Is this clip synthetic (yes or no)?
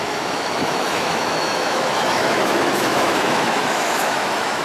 yes